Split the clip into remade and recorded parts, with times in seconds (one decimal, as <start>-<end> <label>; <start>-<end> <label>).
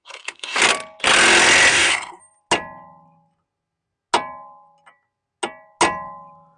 0.0-0.6 remade; 0.6-1.7 recorded; 1.7-2.2 remade; 2.2-6.6 recorded